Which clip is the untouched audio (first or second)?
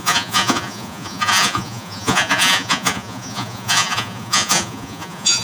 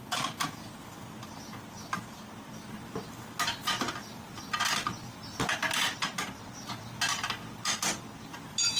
second